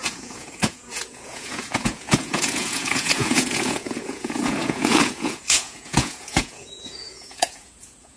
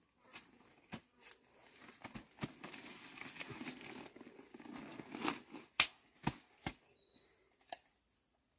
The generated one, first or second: first